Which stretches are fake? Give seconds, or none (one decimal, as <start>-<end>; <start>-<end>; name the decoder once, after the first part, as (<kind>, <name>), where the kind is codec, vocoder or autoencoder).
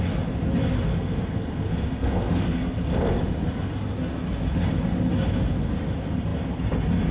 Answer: 0.9-3.1 (codec, SNAC)